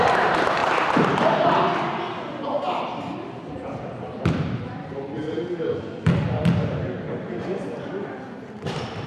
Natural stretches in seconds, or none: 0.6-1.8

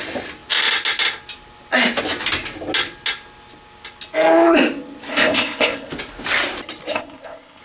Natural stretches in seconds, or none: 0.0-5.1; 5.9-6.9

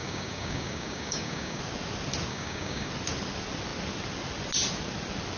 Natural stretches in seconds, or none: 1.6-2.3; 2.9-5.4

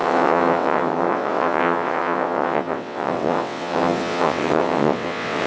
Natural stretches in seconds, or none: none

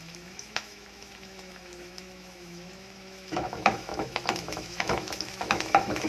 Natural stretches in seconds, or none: none

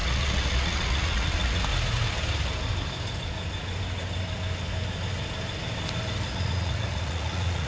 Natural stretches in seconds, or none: 1.7-6.3

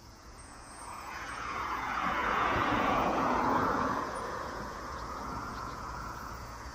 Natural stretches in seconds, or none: none

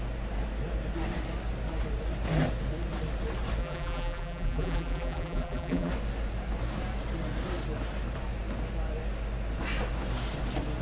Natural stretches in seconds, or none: 0.0-3.6; 5.9-10.8